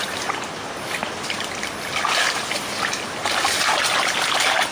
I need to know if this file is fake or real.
real